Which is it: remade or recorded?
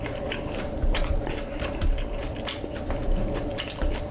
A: remade